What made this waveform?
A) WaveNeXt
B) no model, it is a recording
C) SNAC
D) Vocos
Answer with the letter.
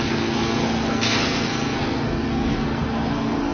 C